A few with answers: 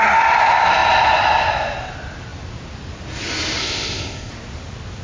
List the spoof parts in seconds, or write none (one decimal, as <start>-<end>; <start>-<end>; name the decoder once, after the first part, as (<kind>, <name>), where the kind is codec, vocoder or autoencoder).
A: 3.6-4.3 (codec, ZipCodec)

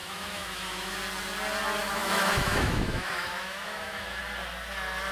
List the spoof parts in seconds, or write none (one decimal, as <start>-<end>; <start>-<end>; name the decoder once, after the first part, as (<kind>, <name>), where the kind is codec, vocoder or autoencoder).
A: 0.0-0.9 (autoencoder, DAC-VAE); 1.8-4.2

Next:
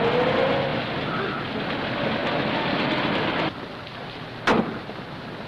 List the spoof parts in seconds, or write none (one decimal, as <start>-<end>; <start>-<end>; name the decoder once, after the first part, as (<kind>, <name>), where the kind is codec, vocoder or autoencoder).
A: none